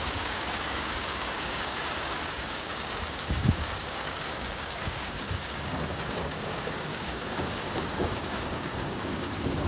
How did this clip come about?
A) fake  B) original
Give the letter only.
A